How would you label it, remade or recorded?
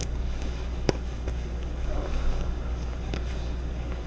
remade